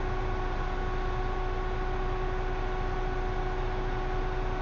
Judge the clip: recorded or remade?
recorded